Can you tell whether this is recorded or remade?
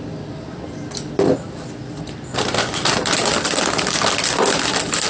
recorded